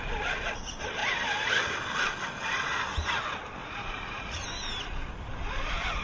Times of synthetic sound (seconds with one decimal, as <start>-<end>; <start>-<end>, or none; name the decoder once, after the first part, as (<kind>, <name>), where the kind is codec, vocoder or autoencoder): 3.6-4.4 (vocoder, Vocos)